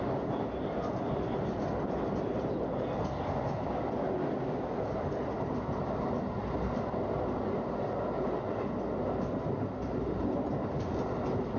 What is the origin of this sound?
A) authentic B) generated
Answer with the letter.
A